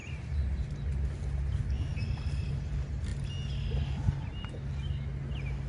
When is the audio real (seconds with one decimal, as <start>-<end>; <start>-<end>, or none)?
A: 0.8-1.9; 2.6-5.7

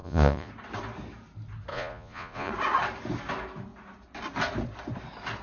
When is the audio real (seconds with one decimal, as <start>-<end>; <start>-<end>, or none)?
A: 0.5-1.7; 2.5-5.4

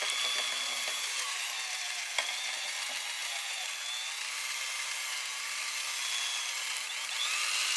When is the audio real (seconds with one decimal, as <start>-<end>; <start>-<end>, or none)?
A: 0.0-7.8

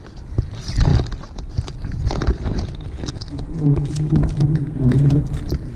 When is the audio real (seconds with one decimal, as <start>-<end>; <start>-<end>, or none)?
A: 0.0-3.1; 5.2-5.8

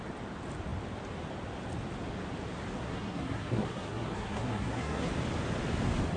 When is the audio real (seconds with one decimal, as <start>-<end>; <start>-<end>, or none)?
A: 0.0-2.8; 5.1-6.2

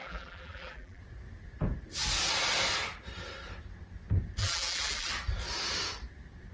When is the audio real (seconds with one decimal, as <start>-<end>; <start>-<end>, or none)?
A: 1.0-4.4; 5.1-6.5